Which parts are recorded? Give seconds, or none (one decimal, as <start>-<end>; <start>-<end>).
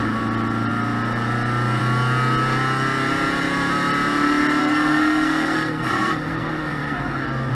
0.0-4.6